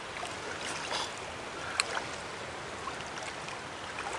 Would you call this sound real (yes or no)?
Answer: yes